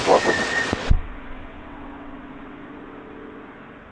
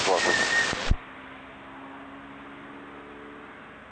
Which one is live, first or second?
second